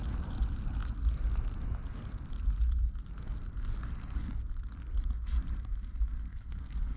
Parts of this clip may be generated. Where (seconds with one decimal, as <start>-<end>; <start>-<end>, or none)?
6.3-7.0